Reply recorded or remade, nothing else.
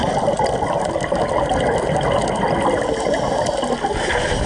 recorded